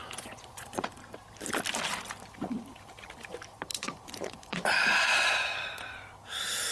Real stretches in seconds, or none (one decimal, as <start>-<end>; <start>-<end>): 1.0-3.7; 6.0-6.7

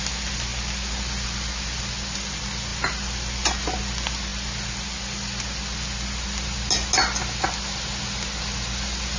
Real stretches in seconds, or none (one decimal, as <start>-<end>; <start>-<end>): 0.0-9.2

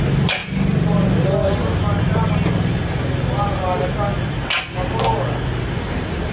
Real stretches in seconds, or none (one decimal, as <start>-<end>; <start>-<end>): 0.0-6.3

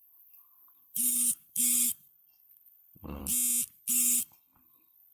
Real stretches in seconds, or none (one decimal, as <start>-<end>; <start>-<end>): 3.2-3.9

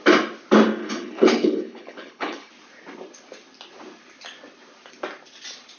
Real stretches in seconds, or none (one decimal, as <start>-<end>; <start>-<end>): 0.0-0.8; 2.5-5.8

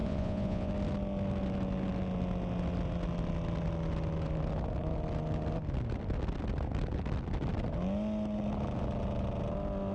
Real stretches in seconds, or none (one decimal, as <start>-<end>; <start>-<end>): 0.7-9.9

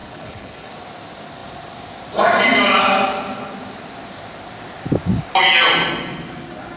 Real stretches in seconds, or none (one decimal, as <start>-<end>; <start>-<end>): 0.7-6.8